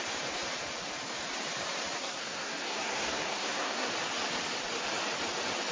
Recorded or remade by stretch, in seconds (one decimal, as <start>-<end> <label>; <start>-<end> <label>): 0.0-2.0 recorded; 2.0-3.9 remade; 3.9-5.7 recorded